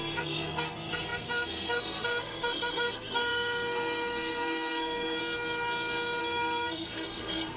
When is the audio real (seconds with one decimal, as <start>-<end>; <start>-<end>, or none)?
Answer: 5.2-6.2